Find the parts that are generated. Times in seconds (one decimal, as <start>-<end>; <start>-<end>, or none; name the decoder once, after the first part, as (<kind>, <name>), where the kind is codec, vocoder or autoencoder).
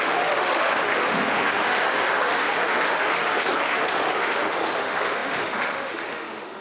0.0-6.6 (autoencoder, DAC-VAE)